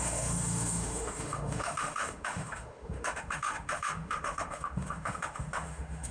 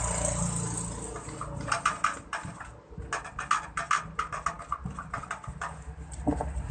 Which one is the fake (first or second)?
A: first